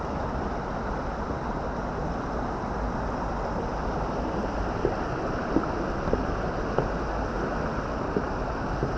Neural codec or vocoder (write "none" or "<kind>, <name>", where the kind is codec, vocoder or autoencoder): none